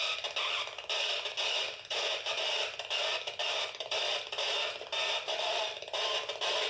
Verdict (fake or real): real